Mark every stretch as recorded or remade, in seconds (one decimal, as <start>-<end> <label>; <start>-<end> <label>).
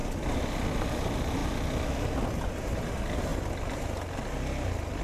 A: 0.0-0.9 recorded; 0.9-1.4 remade; 1.4-2.3 recorded; 2.3-3.3 remade; 3.3-5.0 recorded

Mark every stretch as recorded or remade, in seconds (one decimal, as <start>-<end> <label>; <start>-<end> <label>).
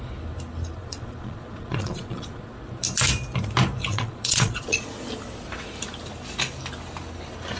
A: 0.0-0.8 recorded; 0.8-2.4 remade; 2.4-3.9 recorded; 3.9-4.9 remade; 4.9-7.6 recorded